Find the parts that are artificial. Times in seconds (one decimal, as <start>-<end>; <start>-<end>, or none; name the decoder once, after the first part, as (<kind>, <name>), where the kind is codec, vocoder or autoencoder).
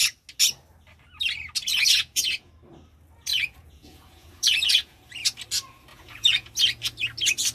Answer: 1.7-2.5 (vocoder, Vocos); 3.3-5.0; 5.9-6.5